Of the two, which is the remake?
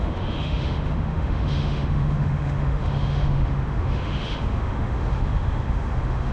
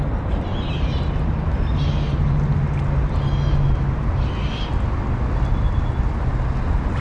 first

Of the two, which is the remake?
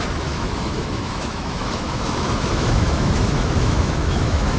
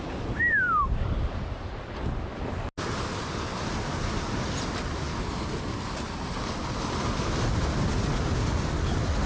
first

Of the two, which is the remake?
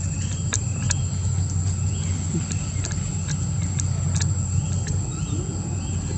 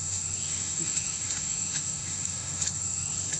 second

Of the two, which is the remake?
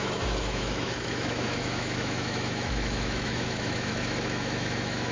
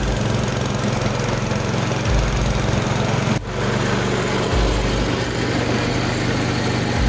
first